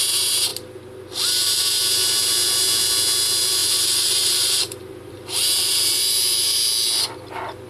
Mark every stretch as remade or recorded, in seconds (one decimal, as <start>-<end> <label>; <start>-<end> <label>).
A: 0.0-3.6 recorded; 3.6-6.0 remade; 6.0-7.7 recorded